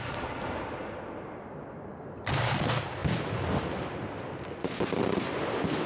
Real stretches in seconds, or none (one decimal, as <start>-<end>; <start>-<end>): 0.0-5.9